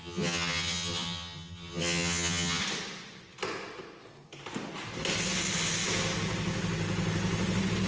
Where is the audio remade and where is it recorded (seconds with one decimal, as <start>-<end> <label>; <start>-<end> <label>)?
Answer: 0.0-2.6 remade; 2.6-7.9 recorded